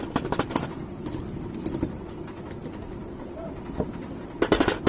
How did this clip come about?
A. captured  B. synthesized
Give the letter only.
A